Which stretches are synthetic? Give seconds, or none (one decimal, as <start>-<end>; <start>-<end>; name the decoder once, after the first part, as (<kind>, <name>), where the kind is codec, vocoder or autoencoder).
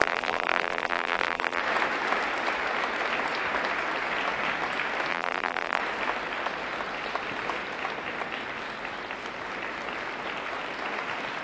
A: 0.0-1.6 (vocoder, BigVGAN v2); 5.1-5.8